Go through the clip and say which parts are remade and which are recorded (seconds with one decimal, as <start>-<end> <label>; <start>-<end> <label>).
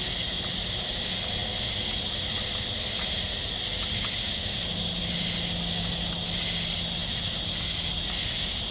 0.0-8.7 recorded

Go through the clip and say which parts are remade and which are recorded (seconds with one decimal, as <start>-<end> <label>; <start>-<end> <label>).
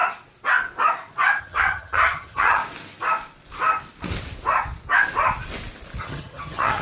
0.0-1.4 recorded; 1.4-2.6 remade; 2.6-6.0 recorded; 6.0-6.8 remade